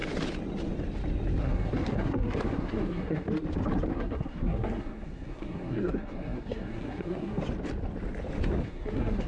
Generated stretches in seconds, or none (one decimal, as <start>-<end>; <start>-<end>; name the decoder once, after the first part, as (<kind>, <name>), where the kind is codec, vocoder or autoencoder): 1.4-3.3 (codec, SNAC); 3.9-7.4; 8.6-9.3